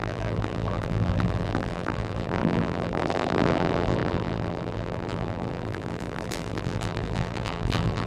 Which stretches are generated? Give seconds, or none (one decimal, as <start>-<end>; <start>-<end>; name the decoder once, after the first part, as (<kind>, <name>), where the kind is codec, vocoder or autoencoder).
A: 0.0-8.1 (vocoder, BigVGAN v2)